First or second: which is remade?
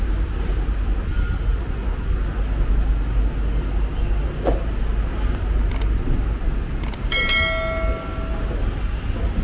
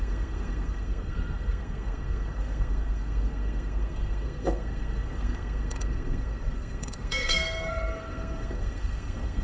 second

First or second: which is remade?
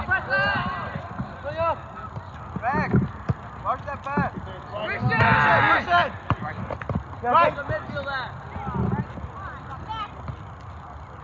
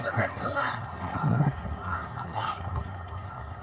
second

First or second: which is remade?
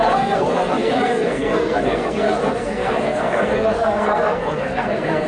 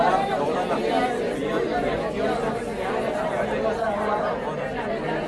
first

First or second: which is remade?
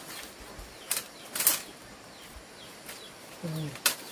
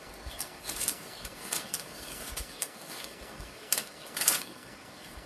second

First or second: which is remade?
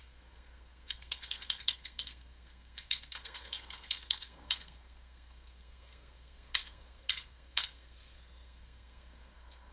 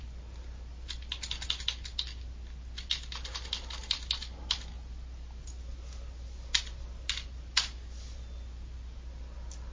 first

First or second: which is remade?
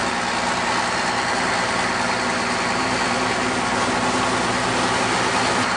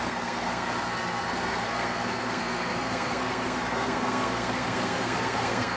second